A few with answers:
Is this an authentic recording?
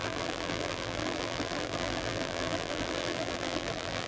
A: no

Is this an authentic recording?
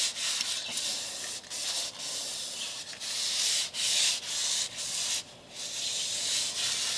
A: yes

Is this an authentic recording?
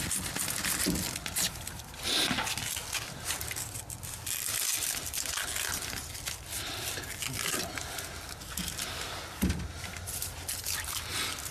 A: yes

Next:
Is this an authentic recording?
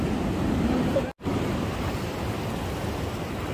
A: no